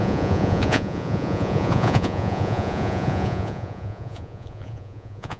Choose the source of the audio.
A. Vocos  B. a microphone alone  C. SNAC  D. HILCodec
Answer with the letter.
A